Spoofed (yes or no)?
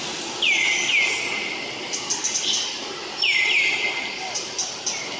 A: no